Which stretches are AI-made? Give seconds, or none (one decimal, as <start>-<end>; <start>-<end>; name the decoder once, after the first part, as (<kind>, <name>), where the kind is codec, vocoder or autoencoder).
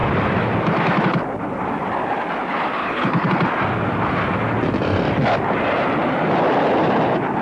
2.8-3.3 (codec, HILCodec)